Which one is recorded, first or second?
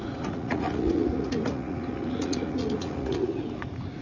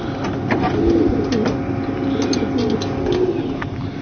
second